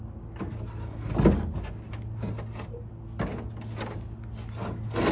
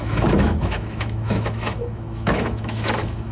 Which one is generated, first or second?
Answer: second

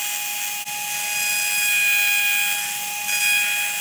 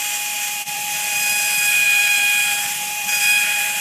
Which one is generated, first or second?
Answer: second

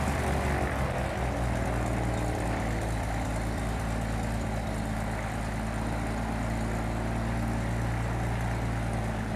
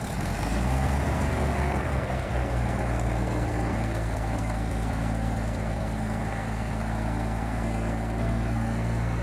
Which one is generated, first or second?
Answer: second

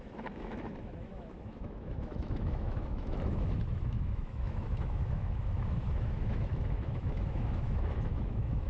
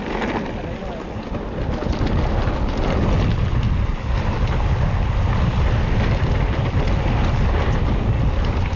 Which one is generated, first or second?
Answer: first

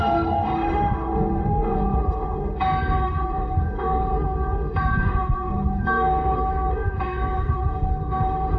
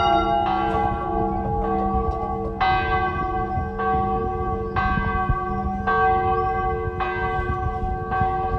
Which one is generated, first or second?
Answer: first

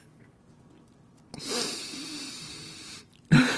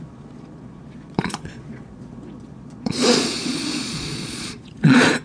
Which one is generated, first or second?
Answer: second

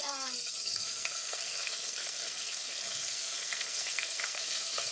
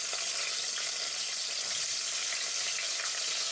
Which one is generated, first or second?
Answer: first